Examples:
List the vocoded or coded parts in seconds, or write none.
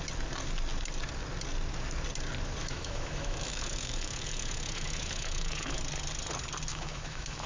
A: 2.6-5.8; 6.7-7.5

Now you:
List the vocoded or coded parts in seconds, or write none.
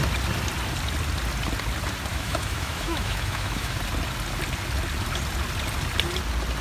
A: 2.1-3.8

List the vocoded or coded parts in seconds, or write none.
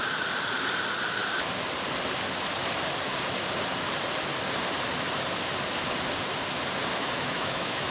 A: 7.0-7.9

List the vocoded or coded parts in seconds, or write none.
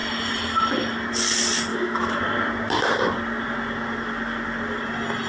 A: 1.7-2.2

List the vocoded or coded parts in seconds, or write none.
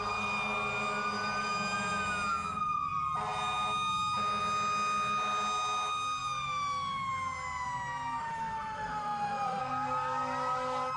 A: 8.2-9.6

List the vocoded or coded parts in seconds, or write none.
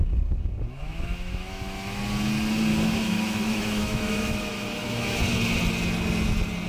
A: 0.8-2.0; 2.7-5.2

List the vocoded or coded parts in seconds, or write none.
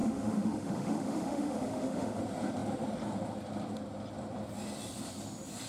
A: 0.0-2.2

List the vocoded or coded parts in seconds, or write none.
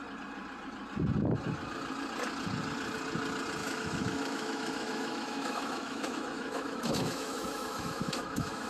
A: 3.6-8.7